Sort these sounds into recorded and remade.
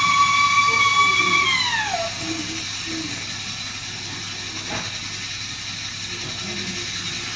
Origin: recorded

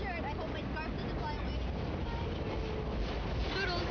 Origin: recorded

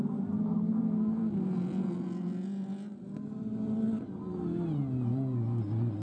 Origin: recorded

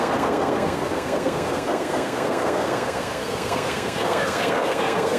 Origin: remade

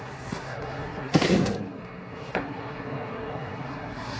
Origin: remade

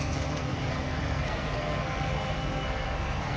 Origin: remade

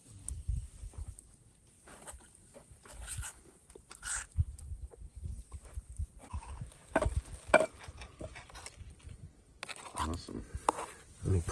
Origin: recorded